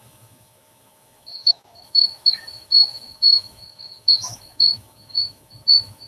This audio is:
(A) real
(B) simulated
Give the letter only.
B